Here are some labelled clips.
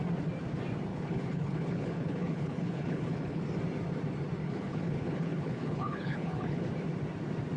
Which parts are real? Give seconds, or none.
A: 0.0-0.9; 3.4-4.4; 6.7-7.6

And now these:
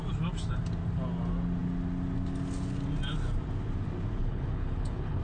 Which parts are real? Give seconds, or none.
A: 0.0-4.2

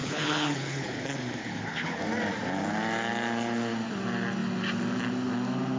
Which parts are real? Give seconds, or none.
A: 1.0-1.4; 2.0-5.8